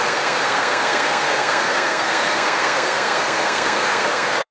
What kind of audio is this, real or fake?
fake